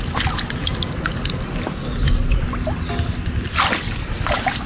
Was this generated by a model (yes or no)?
no